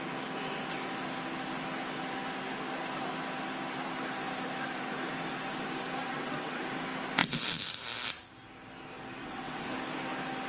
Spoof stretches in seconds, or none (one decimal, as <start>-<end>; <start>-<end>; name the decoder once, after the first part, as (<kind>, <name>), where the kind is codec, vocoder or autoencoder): 6.1-6.6 (vocoder, WaveNeXt); 9.2-9.7